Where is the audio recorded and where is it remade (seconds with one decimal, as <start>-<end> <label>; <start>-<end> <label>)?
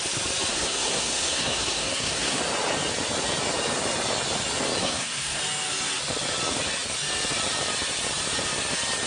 0.0-0.5 recorded; 0.5-2.4 remade; 2.4-4.8 recorded; 4.8-5.4 remade; 5.4-9.1 recorded